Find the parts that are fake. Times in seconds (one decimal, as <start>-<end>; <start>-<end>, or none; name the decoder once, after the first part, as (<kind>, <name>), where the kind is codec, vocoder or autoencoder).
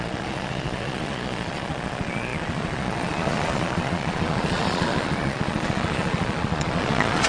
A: 0.0-7.3 (vocoder, Vocos)